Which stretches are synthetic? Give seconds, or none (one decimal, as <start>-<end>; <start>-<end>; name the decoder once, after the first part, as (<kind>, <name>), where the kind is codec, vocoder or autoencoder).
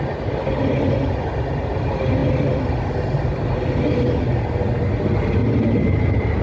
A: 5.4-6.4 (vocoder, BigVGAN v2)